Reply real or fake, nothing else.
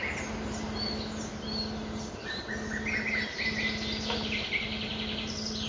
real